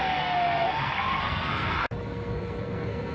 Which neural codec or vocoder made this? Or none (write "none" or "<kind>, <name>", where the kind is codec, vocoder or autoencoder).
codec, SNAC